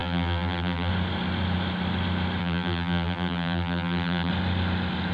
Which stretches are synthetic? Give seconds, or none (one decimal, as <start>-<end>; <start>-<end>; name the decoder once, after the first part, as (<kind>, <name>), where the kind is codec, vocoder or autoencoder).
0.0-0.9 (vocoder, BigVGAN v2); 2.4-4.3